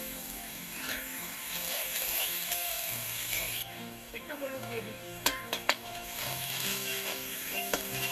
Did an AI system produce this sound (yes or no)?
yes